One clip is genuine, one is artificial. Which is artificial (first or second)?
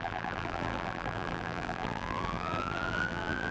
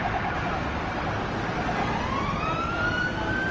first